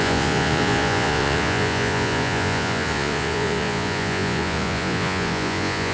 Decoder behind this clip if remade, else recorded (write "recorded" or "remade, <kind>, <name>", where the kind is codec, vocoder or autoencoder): remade, vocoder, Vocos